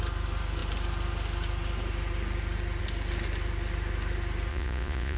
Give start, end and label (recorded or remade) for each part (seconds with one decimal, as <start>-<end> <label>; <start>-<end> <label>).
0.0-4.5 recorded; 4.5-5.2 remade